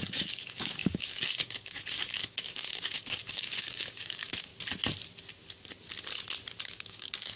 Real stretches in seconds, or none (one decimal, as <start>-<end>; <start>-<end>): 4.5-6.6